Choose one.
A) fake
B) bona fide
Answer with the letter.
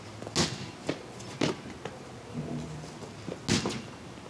B